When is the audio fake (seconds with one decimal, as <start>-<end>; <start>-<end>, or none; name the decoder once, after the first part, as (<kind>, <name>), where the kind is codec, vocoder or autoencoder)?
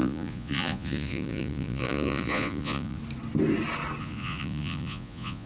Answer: 0.0-3.0 (vocoder, Vocos); 4.0-5.5